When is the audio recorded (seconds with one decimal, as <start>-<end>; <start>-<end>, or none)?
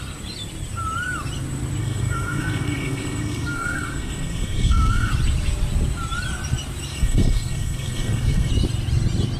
0.0-1.8; 5.1-6.9; 8.5-9.4